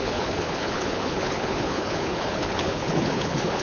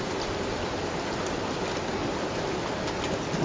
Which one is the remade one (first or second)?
first